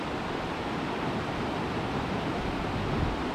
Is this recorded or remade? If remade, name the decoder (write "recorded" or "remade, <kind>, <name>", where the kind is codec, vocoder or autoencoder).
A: recorded